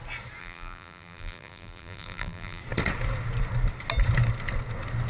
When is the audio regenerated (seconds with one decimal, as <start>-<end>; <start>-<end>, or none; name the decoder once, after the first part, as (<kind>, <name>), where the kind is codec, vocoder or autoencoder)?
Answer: 0.4-2.6 (vocoder, BigVGAN v2)